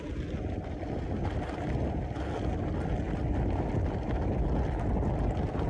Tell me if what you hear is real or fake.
real